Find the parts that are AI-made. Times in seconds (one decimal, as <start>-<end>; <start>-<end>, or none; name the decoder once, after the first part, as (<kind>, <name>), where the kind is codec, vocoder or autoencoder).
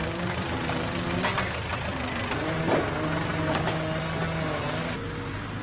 0.0-1.2 (vocoder, BigVGAN v2); 1.7-2.6